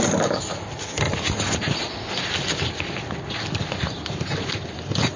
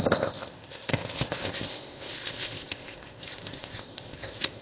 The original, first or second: first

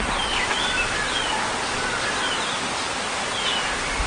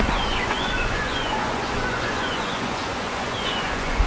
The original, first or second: first